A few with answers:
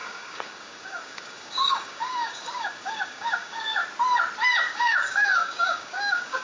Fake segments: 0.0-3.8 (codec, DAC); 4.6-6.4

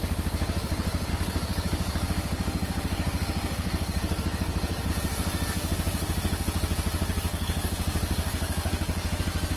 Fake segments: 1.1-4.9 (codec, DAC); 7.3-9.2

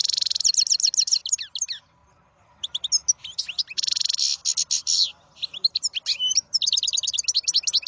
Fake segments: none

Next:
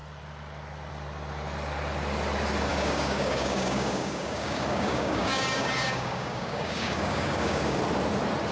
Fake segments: 2.7-7.8 (codec, DAC)

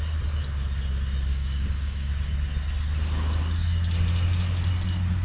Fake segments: 1.3-2.1 (codec, DAC)